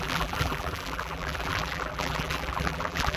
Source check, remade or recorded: remade